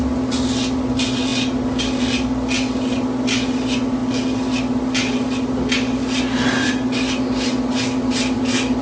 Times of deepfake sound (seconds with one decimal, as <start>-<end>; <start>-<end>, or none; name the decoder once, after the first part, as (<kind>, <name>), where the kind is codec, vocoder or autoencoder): none